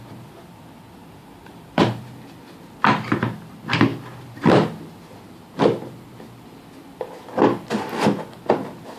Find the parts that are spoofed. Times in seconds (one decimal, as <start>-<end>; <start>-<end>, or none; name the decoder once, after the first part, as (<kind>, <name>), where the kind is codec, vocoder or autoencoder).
1.0-2.0 (vocoder, BigVGAN v2)